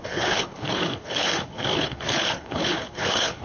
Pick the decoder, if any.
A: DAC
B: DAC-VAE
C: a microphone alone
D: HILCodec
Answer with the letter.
D